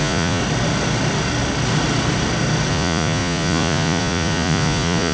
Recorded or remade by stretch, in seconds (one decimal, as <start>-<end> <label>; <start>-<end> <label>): 0.0-0.4 remade; 0.4-2.7 recorded; 2.7-5.1 remade